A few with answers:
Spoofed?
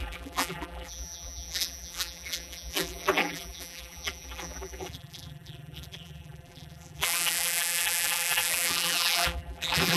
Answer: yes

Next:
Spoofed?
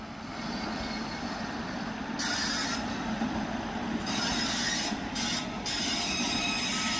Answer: no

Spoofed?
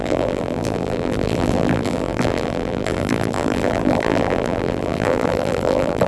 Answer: yes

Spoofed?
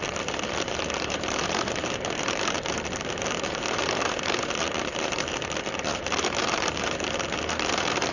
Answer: yes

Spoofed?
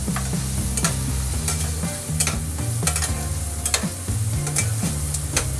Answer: no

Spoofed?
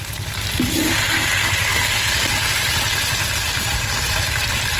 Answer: no